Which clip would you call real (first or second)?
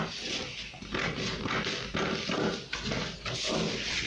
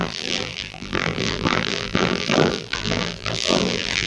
first